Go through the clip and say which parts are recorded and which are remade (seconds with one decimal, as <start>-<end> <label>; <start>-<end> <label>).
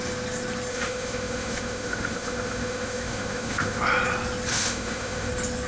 0.0-0.7 recorded; 0.7-3.8 remade; 3.8-4.5 recorded; 4.5-5.3 remade; 5.3-5.7 recorded